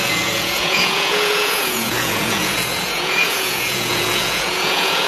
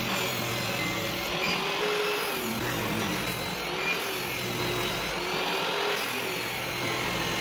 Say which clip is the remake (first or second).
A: first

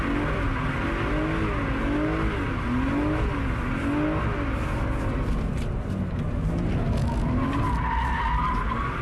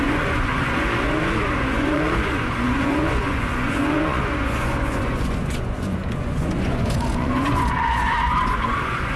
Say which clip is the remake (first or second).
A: second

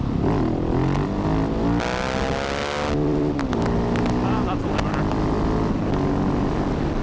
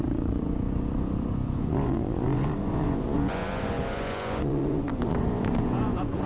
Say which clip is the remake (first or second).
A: second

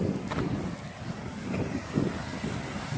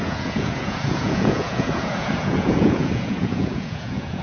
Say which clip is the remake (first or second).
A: second